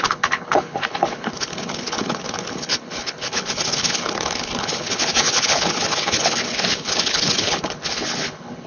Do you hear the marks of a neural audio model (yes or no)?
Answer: yes